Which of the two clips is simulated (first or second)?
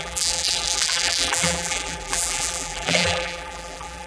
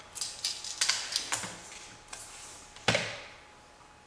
first